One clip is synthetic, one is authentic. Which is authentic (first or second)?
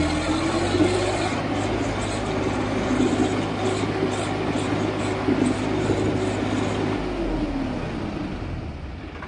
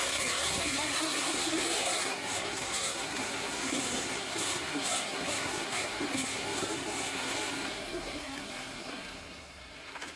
first